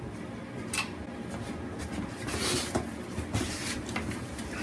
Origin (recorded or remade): recorded